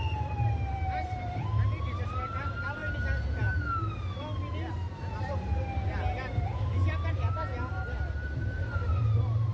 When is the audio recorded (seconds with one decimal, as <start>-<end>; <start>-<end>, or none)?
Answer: 2.8-5.2